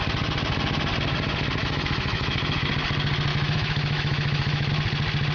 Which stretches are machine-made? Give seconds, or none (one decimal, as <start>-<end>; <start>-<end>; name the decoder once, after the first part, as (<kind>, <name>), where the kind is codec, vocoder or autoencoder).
1.6-2.7 (autoencoder, DAC-VAE); 3.3-4.7